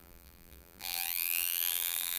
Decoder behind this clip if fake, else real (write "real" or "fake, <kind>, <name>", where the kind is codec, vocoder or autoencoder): fake, vocoder, BigVGAN v2